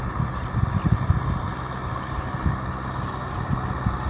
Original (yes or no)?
yes